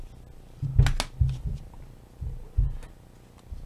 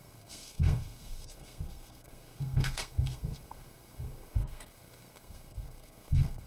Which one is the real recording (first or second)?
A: first